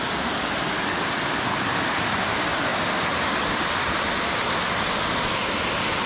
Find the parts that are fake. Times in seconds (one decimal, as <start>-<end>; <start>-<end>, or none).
none